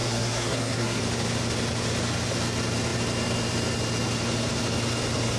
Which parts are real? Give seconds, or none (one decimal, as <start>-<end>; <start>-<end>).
1.0-5.4